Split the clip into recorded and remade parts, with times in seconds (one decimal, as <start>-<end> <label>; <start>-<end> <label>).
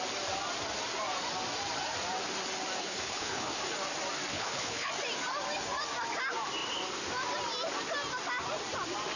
0.0-2.8 recorded; 2.8-3.6 remade; 3.6-4.3 recorded; 4.3-4.9 remade; 4.9-9.2 recorded